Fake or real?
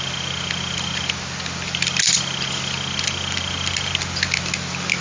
real